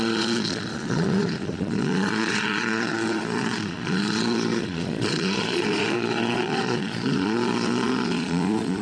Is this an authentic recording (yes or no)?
no